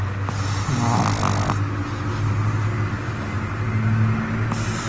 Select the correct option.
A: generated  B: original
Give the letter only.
B